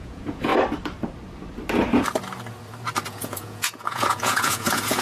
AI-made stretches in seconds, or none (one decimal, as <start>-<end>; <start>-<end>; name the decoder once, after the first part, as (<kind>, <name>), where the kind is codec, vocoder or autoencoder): 0.0-0.5 (vocoder, Vocos); 3.1-5.0